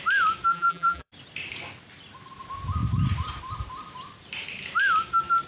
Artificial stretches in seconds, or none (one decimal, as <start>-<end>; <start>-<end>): 0.5-1.1